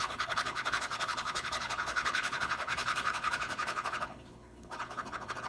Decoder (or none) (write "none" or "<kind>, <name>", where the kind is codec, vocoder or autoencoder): codec, HILCodec